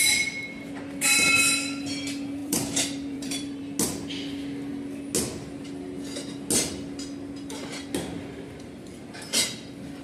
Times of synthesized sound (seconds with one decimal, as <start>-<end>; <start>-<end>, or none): 2.4-3.6